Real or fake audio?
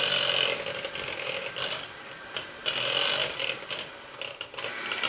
real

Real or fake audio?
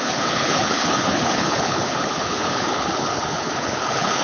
fake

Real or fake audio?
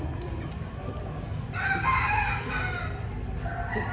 real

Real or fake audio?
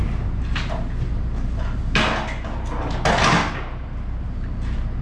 real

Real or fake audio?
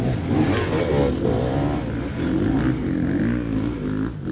real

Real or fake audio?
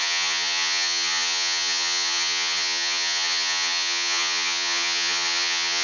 fake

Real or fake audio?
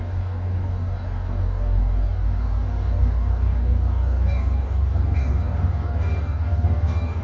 fake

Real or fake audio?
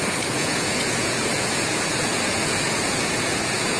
fake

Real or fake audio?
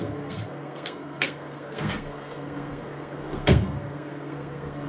fake